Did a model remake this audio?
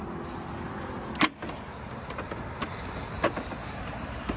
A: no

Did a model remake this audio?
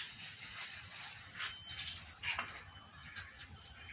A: no